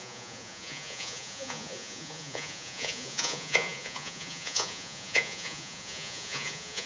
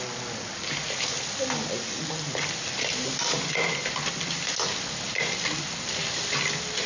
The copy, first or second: first